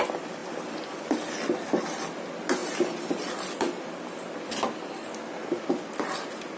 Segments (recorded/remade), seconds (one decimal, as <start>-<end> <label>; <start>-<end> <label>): 0.0-6.6 recorded